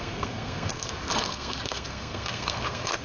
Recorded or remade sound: remade